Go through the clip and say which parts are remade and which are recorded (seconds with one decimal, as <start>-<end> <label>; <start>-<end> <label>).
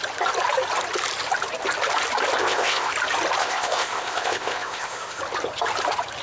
0.0-2.4 recorded; 2.4-2.9 remade; 2.9-3.4 recorded; 3.4-5.2 remade; 5.2-6.2 recorded